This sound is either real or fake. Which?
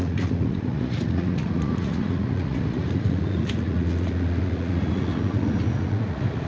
fake